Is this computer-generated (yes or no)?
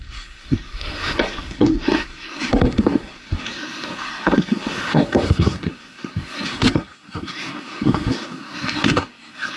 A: yes